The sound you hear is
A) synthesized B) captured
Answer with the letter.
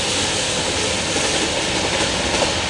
B